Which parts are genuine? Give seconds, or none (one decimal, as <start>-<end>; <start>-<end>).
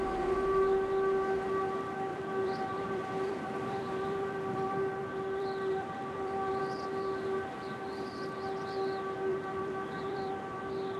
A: 0.0-2.1; 6.6-9.3; 10.6-11.0